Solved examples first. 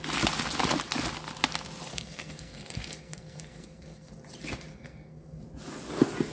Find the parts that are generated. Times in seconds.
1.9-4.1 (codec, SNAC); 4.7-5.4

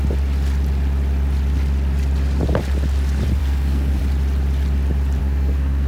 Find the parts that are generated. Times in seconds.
3.4-4.0 (codec, SNAC); 5.2-5.9

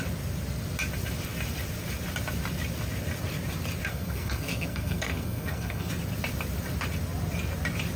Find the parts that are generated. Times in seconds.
3.9-5.9 (codec, SNAC)